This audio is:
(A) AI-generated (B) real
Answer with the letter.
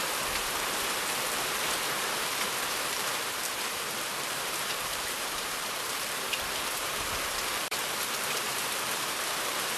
A